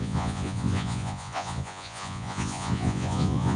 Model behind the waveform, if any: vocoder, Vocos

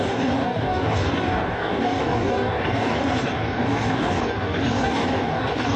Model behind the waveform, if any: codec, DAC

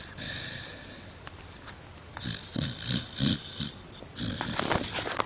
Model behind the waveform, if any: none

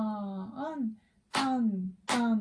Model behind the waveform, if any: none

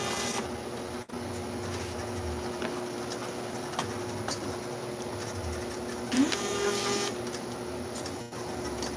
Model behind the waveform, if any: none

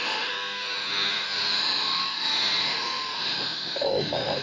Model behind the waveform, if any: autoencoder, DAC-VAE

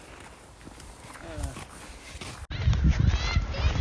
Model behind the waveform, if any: none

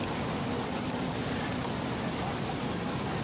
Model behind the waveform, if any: none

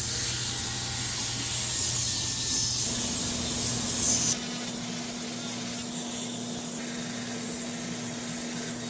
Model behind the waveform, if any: none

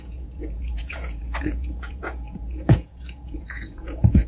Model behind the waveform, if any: vocoder, Vocos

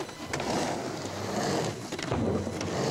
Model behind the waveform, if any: none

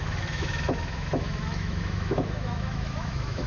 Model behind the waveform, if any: autoencoder, DAC-VAE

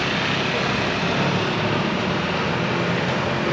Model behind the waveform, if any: none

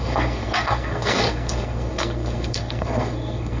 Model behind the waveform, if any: codec, SNAC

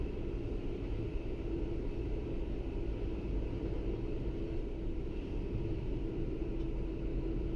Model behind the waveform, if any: none